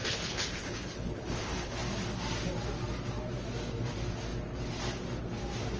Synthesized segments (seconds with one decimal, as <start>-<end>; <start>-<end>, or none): 0.0-1.8